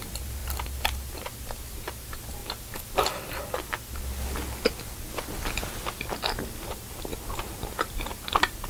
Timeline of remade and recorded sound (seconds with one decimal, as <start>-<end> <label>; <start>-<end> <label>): 0.0-2.4 remade; 2.4-7.3 recorded; 7.3-8.7 remade